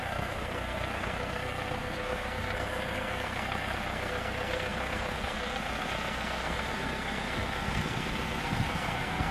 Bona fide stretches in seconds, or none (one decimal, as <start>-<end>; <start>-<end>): none